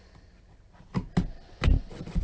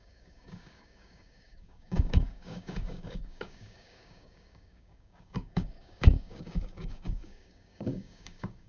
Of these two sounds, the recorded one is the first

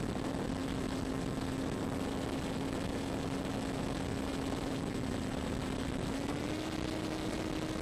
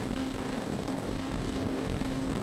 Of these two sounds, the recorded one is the first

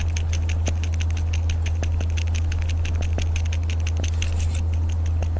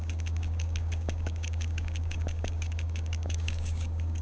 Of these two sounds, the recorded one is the first